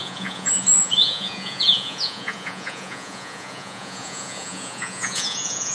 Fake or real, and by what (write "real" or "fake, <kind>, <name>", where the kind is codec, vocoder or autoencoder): fake, vocoder, Vocos